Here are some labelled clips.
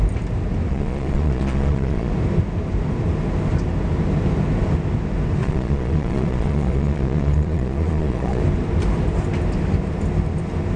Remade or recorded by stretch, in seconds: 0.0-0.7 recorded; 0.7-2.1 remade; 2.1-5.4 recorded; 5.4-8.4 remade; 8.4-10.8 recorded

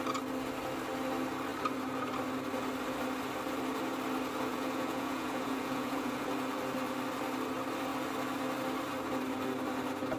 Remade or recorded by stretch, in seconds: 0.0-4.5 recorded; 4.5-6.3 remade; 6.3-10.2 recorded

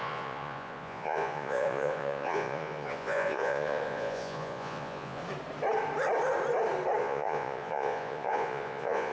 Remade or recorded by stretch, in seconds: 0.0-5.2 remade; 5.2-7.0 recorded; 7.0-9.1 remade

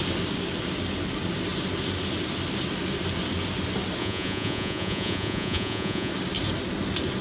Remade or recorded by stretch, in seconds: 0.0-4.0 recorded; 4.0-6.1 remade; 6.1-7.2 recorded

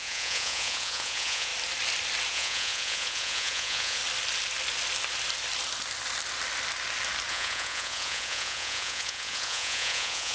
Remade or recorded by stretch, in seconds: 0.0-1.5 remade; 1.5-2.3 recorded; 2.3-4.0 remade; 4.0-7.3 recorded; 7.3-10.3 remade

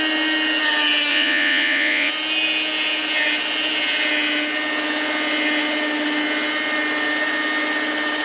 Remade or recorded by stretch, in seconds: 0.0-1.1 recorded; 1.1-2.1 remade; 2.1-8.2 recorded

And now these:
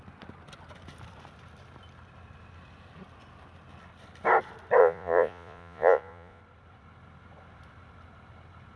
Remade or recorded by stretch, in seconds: 0.0-4.8 recorded; 4.8-6.4 remade; 6.4-8.8 recorded

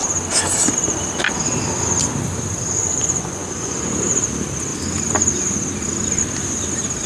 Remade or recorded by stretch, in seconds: 0.0-2.8 recorded; 2.8-3.9 remade; 3.9-7.1 recorded